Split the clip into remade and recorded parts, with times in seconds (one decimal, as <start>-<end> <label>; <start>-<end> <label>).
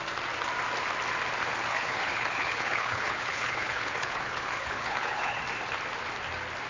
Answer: 0.0-1.7 recorded; 1.7-5.4 remade; 5.4-6.7 recorded